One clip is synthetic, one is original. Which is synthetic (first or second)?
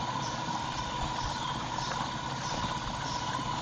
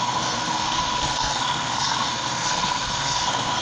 second